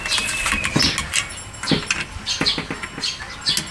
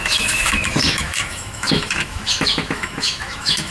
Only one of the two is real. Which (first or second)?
first